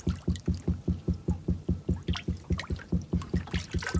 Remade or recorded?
recorded